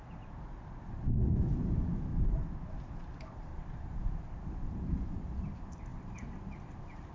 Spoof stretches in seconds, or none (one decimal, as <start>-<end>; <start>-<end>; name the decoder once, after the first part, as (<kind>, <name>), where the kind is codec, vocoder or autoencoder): 2.1-2.8 (vocoder, BigVGAN v2); 3.5-4.9